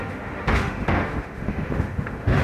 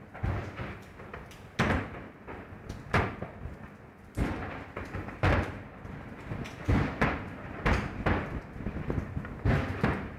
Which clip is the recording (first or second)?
second